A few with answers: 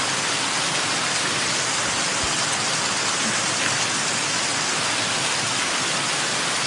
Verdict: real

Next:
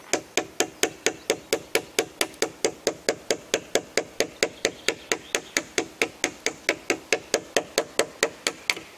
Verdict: real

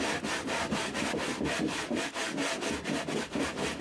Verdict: real